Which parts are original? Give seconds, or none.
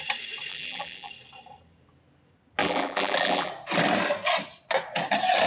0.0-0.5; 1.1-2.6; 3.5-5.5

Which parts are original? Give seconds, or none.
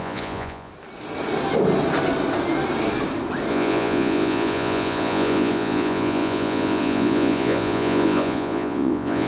0.7-3.5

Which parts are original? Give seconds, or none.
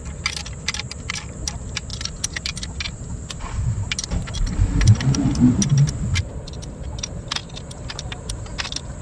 none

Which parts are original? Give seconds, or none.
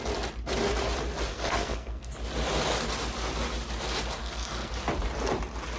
0.0-1.3; 2.1-4.2; 4.7-5.8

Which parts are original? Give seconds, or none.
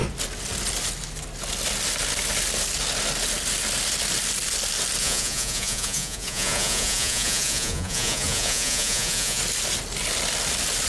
0.0-5.0; 9.4-10.9